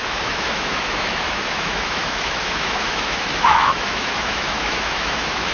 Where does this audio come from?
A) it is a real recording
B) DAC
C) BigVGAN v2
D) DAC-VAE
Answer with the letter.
D